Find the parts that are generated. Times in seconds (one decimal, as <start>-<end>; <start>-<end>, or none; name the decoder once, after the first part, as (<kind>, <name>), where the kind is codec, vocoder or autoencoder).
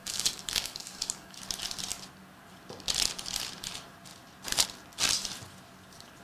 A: 0.0-1.4 (codec, DAC)